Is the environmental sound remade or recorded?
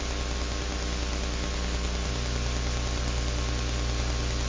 recorded